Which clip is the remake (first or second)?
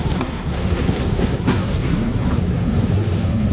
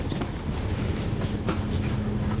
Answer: first